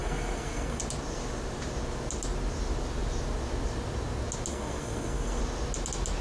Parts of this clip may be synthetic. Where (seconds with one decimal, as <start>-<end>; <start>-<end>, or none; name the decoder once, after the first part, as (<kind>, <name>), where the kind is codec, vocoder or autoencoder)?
0.0-0.8 (codec, SNAC); 4.5-5.4